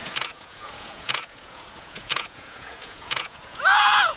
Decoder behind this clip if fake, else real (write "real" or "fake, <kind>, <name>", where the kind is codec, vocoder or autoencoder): fake, vocoder, Vocos